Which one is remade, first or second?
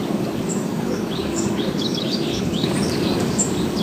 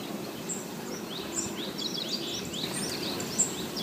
first